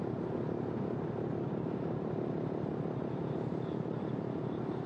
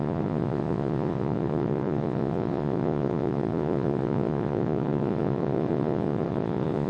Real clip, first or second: first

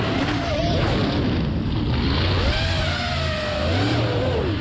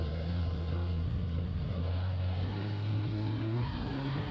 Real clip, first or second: first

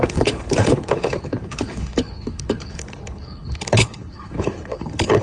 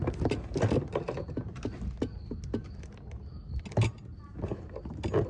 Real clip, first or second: second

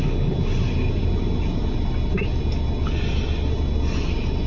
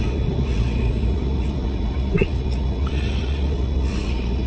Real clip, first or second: first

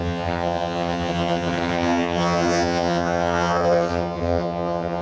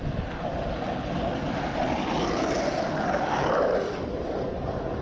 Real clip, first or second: second